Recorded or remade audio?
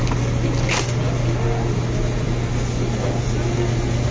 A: recorded